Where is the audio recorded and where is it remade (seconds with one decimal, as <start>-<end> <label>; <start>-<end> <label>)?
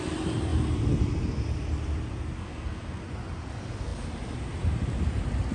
0.0-2.4 recorded; 2.4-3.0 remade; 3.0-5.5 recorded